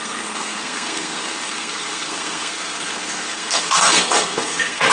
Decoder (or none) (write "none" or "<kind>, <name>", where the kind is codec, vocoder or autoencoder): codec, SNAC